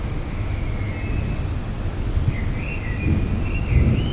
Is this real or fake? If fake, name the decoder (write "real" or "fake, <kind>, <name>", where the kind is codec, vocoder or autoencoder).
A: real